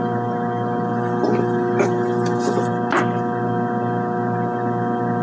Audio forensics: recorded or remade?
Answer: recorded